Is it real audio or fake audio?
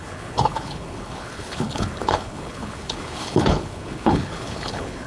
fake